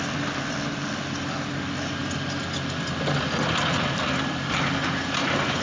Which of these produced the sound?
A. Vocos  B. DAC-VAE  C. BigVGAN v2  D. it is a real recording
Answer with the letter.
C